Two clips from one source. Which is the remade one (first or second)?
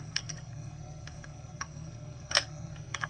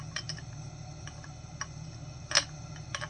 first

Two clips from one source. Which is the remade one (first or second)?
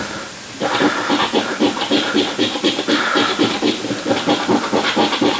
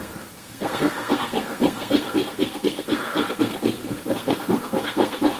second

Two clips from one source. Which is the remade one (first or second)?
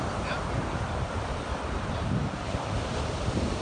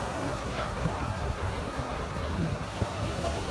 second